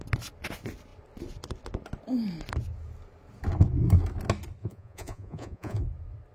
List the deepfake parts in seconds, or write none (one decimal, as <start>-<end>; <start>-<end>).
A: 4.6-5.8